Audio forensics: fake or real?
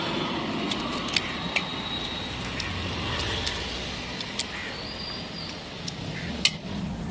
real